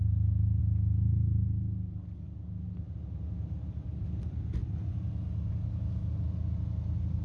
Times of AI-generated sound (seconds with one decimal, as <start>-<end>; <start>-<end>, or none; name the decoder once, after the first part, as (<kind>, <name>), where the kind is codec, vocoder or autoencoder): none